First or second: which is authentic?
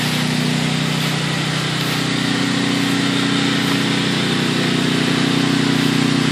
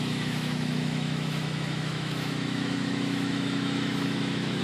first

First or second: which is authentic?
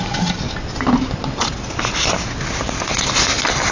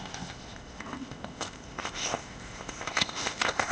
first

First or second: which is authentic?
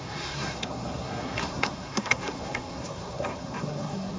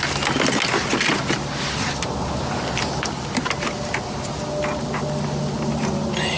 second